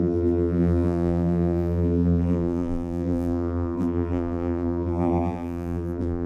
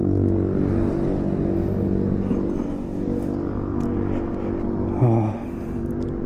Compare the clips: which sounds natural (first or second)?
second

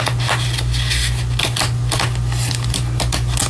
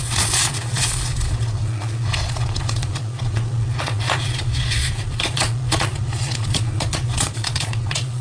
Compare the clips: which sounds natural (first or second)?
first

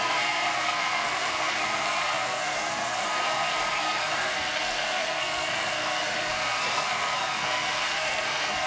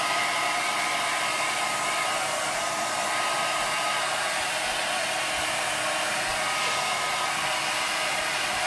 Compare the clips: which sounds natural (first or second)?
second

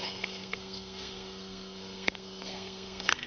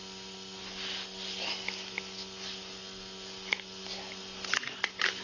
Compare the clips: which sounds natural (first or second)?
second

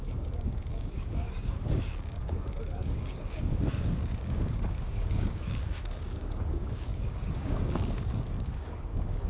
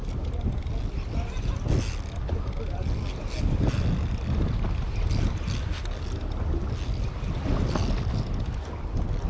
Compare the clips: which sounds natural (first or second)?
second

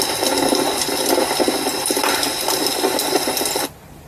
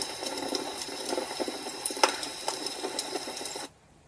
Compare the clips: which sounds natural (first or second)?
first